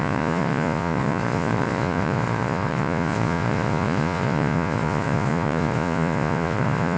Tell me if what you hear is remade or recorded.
remade